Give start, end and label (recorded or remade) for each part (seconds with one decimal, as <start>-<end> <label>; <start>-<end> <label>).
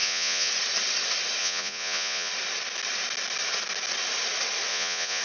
0.0-0.5 remade; 0.5-1.4 recorded; 1.4-2.3 remade; 2.3-4.7 recorded; 4.7-5.2 remade